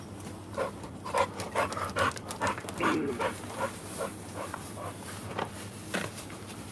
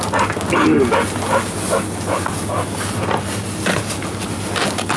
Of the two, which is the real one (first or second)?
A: second